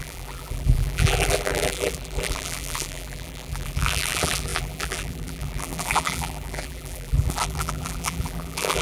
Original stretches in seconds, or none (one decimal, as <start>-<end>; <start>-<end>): none